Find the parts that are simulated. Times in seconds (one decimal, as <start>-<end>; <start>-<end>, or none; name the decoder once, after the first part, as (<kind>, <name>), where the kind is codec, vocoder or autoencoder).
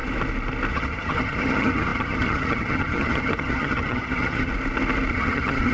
0.7-4.5 (vocoder, HiFi-GAN); 5.1-5.7